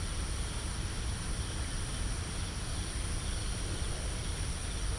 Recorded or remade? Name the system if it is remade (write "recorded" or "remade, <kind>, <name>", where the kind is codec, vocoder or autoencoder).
recorded